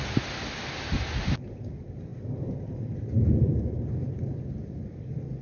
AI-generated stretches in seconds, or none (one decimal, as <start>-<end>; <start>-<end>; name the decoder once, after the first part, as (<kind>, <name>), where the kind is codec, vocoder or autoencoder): none